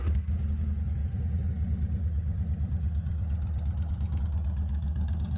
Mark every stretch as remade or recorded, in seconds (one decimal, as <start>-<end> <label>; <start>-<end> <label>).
0.0-1.0 recorded; 1.0-4.2 remade; 4.2-5.4 recorded